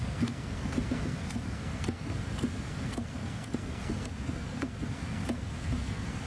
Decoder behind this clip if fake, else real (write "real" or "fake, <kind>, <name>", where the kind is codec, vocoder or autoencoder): fake, codec, SNAC